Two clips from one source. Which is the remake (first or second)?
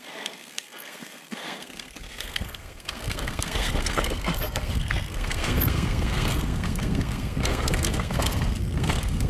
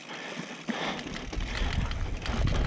first